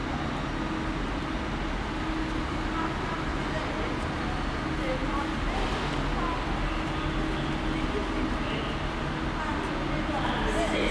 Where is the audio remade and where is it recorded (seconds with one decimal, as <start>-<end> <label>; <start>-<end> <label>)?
0.0-10.9 recorded